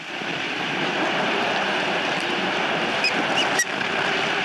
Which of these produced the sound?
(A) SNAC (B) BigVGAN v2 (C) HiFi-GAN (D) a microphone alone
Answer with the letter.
B